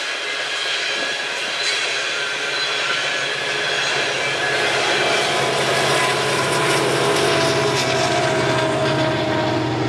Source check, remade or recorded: recorded